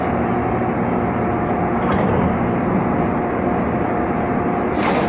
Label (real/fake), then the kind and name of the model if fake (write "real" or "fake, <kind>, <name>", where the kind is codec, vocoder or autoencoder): real